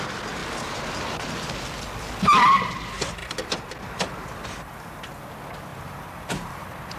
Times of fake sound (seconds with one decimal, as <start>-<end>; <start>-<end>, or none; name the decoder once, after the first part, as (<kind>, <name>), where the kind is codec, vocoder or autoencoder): 3.2-4.1 (vocoder, BigVGAN v2); 5.7-7.0